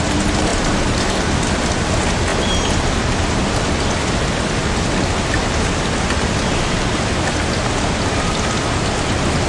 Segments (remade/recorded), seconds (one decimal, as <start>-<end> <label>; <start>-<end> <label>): 0.0-9.5 recorded